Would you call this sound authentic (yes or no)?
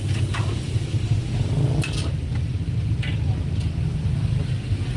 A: yes